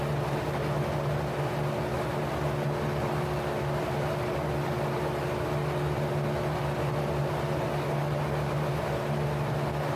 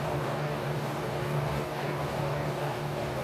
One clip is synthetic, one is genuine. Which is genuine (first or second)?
first